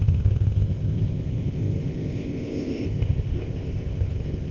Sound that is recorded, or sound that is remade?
remade